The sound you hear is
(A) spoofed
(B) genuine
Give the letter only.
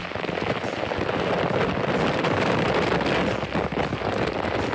B